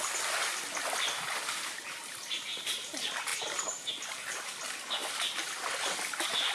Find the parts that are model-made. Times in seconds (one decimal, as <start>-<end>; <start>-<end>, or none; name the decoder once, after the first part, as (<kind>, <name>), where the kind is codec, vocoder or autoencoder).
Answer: 3.3-3.9 (vocoder, BigVGAN v2)